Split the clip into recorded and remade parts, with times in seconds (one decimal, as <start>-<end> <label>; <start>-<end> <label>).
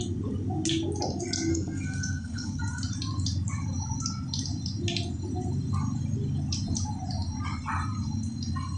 0.0-1.5 recorded; 1.5-2.6 remade; 2.6-8.8 recorded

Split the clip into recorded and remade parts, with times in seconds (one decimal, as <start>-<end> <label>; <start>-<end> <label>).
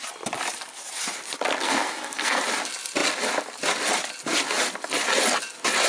0.0-1.6 recorded; 1.6-2.4 remade; 2.4-5.9 recorded